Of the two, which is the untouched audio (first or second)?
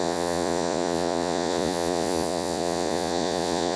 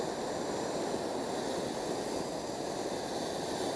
second